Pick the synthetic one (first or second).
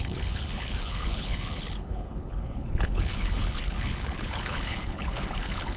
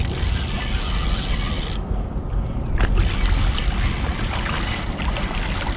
first